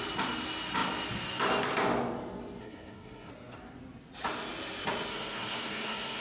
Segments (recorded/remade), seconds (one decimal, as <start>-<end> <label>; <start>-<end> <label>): 0.0-2.6 recorded; 2.6-3.3 remade; 3.3-5.1 recorded; 5.1-6.2 remade